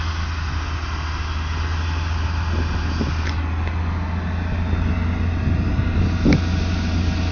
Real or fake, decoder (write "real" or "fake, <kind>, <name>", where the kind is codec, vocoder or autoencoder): real